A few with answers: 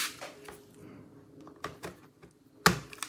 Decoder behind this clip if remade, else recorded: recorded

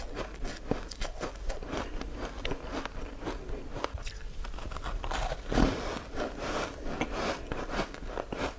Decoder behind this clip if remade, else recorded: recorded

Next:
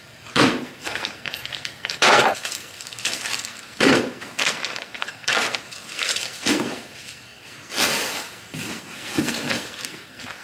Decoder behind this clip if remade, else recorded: remade, codec, SNAC